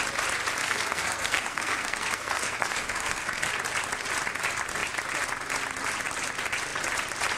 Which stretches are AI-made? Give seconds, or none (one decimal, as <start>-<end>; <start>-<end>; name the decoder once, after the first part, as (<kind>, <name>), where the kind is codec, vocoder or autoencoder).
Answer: 0.6-3.5 (codec, SNAC)